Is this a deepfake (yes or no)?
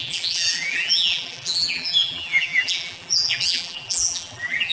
yes